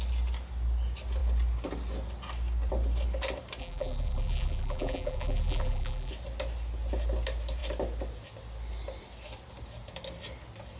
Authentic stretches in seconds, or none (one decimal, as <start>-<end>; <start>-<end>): 0.0-3.6; 6.1-10.8